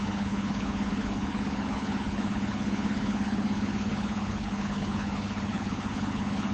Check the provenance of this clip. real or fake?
fake